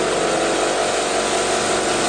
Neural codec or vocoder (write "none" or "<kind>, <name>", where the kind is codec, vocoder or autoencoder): none